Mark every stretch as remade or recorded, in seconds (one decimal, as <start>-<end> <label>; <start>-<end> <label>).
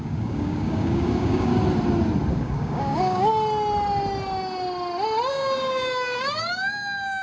0.0-1.5 remade; 1.5-2.3 recorded; 2.3-3.3 remade; 3.3-5.3 recorded; 5.3-7.2 remade